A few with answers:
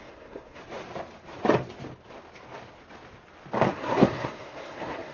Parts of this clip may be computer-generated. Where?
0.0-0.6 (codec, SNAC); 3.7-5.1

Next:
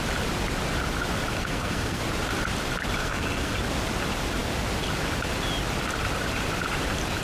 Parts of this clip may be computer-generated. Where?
1.3-2.0 (codec, SNAC); 3.0-3.5

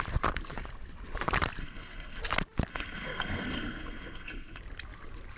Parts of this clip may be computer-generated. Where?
1.6-2.2 (codec, SNAC); 2.7-4.6

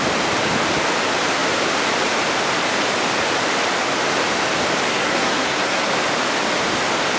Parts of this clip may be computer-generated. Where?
4.9-5.9 (codec, SNAC)

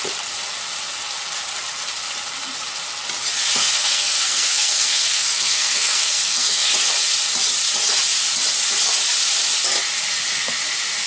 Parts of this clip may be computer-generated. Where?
3.6-6.7 (codec, SNAC)

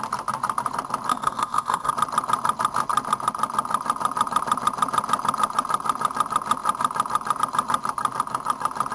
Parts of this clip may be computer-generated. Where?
1.1-1.9 (codec, SNAC)

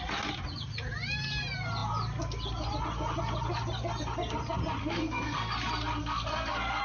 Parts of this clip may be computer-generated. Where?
4.8-5.5 (codec, SNAC); 6.0-6.8